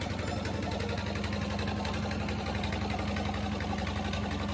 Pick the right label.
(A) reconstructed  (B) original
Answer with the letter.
B